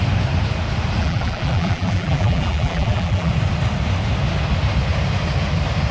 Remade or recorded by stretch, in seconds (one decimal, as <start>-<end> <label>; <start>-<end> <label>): 0.0-1.0 recorded; 1.0-3.3 remade; 3.3-5.9 recorded